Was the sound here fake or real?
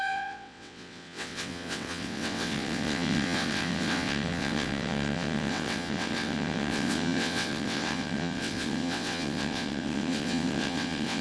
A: fake